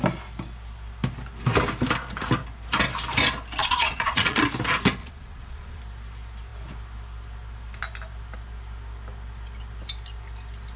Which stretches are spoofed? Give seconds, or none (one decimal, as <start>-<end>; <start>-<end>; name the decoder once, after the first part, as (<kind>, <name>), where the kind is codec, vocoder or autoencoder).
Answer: 3.6-4.4 (vocoder, Vocos); 5.0-5.8